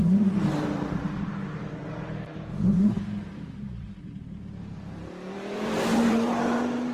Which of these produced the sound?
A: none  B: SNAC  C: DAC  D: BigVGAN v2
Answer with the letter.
D